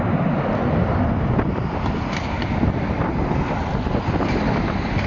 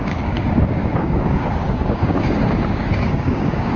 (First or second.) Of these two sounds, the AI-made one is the second